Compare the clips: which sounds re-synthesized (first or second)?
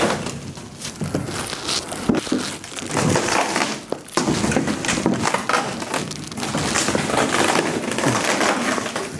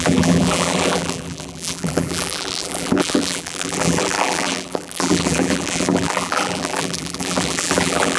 second